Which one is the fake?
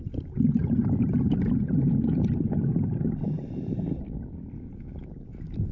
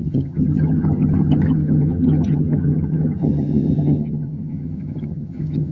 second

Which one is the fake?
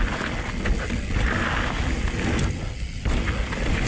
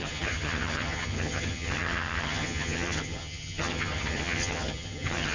second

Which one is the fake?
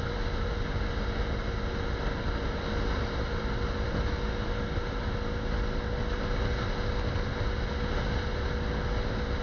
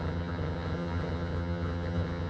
second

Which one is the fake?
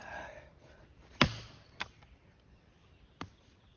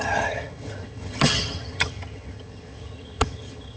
second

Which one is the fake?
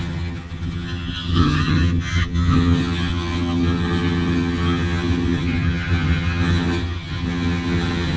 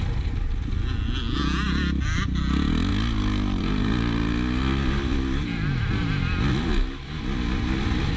first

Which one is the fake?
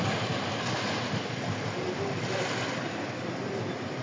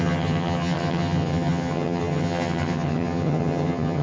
second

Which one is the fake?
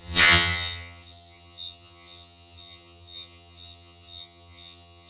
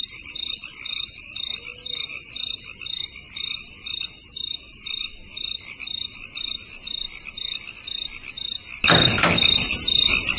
first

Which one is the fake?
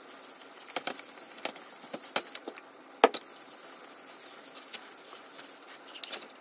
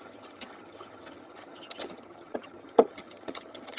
second